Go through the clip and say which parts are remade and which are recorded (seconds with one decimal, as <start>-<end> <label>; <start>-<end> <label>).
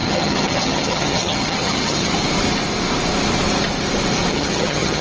0.0-2.1 remade; 2.1-4.3 recorded; 4.3-5.0 remade